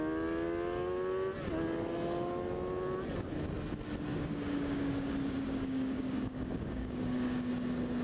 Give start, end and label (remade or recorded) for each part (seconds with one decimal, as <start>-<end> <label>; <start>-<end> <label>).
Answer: 0.0-4.1 recorded; 4.1-7.5 remade; 7.5-8.0 recorded

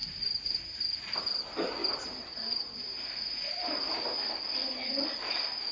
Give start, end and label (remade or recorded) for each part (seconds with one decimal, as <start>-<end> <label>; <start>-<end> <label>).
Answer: 0.0-1.2 remade; 1.2-1.8 recorded; 1.8-4.3 remade; 4.3-5.7 recorded